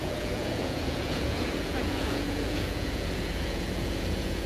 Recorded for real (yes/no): no